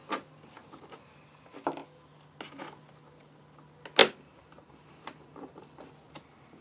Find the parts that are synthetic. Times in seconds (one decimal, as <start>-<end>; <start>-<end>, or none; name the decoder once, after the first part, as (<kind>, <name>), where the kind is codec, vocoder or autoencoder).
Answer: 4.0-5.9 (vocoder, BigVGAN v2)